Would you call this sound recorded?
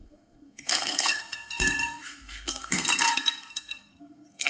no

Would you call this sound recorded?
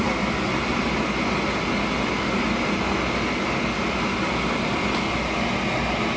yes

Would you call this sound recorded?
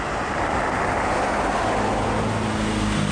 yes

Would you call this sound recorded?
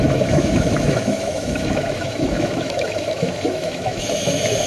no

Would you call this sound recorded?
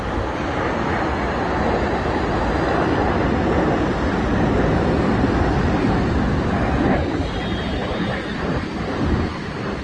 yes